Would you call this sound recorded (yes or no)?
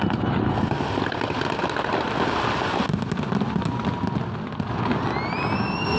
yes